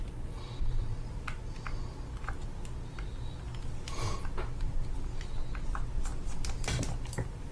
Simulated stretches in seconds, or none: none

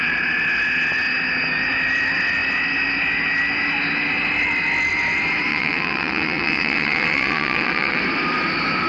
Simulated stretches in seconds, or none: 5.5-8.0 (vocoder, WaveNeXt)

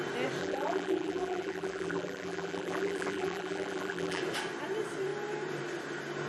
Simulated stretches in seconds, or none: 0.4-4.2 (vocoder, BigVGAN v2)

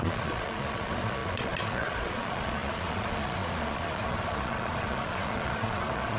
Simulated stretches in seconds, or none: 0.0-6.2 (vocoder, Vocos)

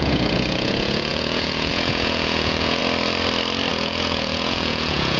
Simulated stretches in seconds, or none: 0.0-2.8 (vocoder, Vocos); 3.7-5.2

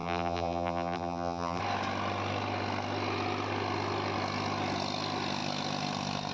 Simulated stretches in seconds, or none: 0.0-1.6 (vocoder, BigVGAN v2)